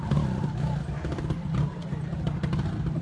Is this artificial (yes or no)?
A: no